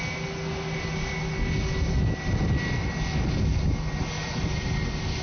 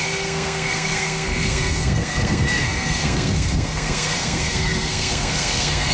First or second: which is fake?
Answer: second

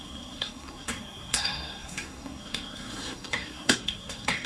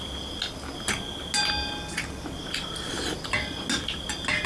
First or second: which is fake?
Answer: first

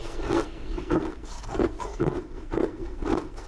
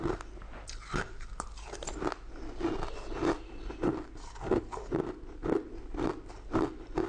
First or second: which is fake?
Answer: first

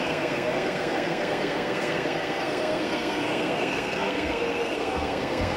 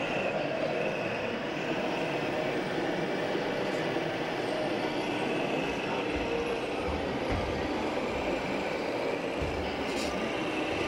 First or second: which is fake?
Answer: first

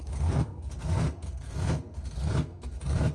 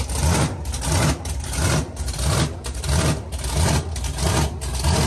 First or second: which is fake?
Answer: first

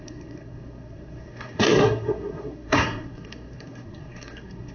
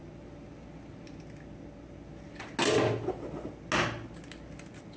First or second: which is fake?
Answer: first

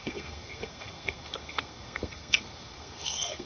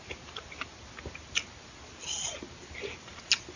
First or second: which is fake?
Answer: first